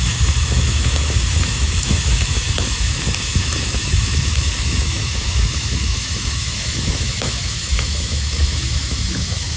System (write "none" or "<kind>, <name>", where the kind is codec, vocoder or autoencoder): autoencoder, DAC-VAE